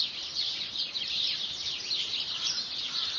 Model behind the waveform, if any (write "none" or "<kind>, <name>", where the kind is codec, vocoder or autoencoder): vocoder, BigVGAN v2